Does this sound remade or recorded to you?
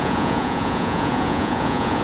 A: remade